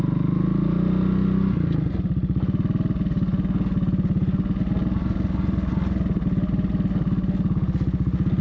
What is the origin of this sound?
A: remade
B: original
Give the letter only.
B